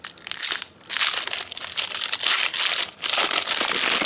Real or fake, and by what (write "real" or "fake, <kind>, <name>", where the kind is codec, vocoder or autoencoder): real